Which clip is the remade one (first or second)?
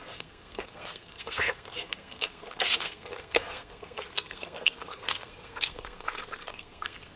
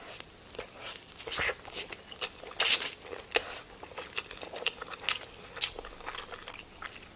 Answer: first